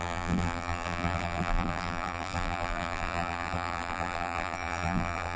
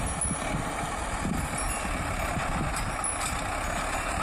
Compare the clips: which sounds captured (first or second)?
second